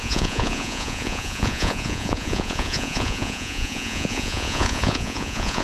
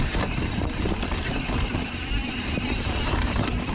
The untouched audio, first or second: second